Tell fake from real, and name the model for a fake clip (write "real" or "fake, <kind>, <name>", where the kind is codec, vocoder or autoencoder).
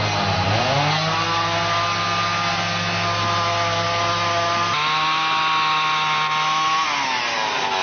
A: real